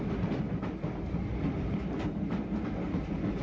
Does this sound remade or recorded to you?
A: recorded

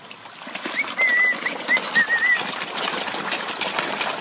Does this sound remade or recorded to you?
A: recorded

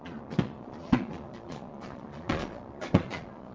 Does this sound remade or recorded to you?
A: remade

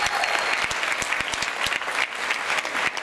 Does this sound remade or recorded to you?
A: recorded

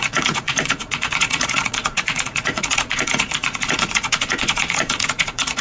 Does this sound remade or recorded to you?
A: remade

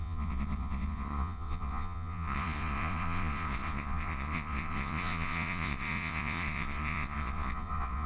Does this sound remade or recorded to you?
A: remade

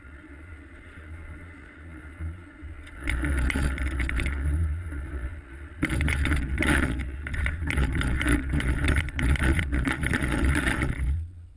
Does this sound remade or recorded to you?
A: remade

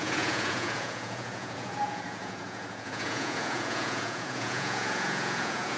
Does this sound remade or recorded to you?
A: remade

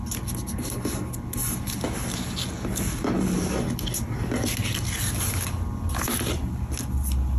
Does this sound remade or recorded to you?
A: recorded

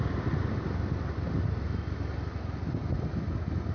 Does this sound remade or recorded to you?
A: recorded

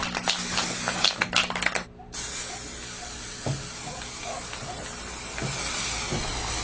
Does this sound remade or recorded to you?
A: recorded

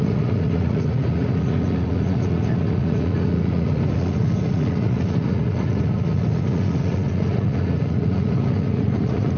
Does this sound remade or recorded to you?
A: remade